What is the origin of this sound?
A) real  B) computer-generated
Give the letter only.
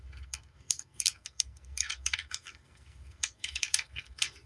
B